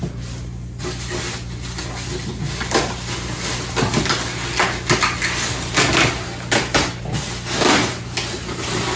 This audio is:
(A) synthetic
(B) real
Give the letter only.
B